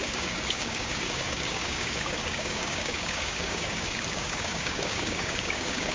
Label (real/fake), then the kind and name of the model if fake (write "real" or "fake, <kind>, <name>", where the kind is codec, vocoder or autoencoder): fake, codec, DAC